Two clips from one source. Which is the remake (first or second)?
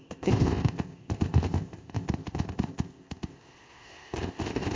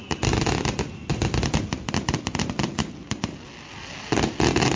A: first